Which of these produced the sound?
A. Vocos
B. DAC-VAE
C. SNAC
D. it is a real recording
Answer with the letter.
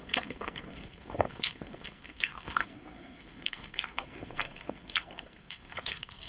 C